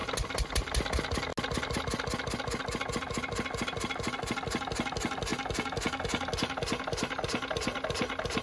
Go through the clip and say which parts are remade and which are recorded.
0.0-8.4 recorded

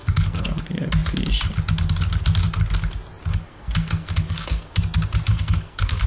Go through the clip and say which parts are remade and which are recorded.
0.0-0.6 remade; 0.6-3.3 recorded; 3.3-4.8 remade; 4.8-5.3 recorded; 5.3-6.1 remade

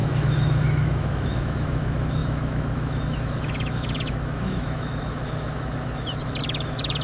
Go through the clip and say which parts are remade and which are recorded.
0.0-7.0 remade

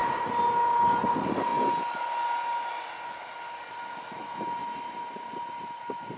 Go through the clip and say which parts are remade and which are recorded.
0.0-6.2 recorded

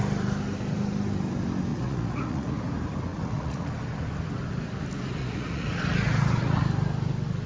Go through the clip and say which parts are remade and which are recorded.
0.0-1.7 recorded; 1.7-2.6 remade; 2.6-3.1 recorded; 3.1-3.7 remade; 3.7-5.2 recorded; 5.2-6.6 remade; 6.6-7.5 recorded